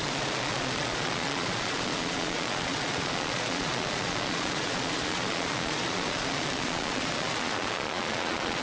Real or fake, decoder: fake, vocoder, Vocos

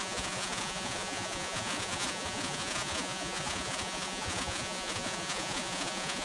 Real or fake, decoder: fake, vocoder, Vocos